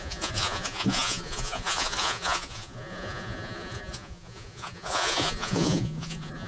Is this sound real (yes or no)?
no